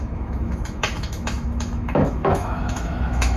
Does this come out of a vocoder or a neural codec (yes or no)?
yes